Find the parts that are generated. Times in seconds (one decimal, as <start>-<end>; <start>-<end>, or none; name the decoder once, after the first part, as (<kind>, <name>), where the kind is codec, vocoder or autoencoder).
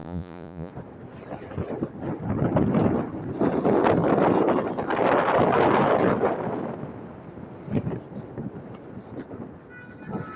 0.0-0.7 (vocoder, Vocos)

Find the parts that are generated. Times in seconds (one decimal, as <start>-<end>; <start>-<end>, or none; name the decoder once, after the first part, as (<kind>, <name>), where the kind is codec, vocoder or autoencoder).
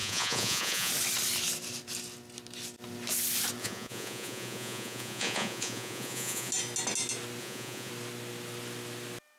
0.0-0.9 (vocoder, Vocos); 3.6-6.5; 7.4-7.9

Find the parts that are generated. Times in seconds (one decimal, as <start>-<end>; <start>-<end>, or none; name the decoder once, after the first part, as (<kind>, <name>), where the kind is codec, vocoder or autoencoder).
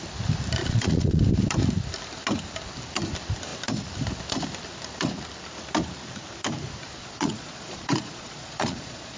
0.6-1.2 (vocoder, Vocos); 7.0-9.2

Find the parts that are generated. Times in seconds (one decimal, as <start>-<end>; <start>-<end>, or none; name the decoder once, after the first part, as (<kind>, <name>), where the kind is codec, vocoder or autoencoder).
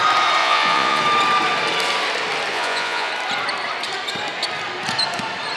0.4-1.0 (vocoder, Vocos); 2.5-3.1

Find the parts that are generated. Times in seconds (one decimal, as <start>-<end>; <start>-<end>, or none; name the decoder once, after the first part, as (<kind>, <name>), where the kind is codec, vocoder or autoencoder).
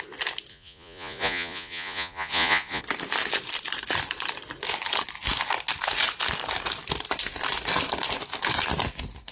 0.5-2.8 (vocoder, Vocos)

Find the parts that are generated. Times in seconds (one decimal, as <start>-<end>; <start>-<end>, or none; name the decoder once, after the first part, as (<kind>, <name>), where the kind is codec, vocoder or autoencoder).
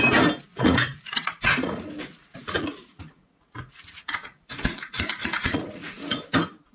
0.5-1.8 (vocoder, Vocos); 2.2-6.2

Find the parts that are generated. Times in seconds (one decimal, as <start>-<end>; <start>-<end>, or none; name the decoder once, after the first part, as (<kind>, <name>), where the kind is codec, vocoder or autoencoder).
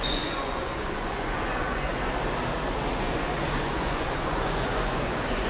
0.0-1.9 (vocoder, Vocos); 3.0-5.5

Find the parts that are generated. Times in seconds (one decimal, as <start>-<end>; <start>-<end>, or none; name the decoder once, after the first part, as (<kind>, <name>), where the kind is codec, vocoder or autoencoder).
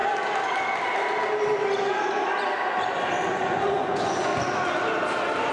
3.3-4.3 (vocoder, Vocos)